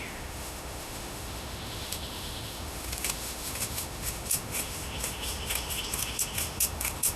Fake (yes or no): yes